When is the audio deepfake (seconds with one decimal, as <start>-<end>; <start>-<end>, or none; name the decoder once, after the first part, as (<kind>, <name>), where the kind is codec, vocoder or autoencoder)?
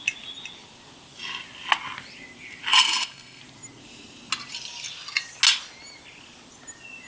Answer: 2.7-3.4 (codec, SNAC)